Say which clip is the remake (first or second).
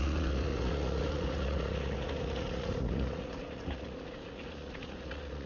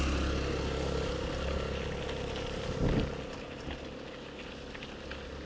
first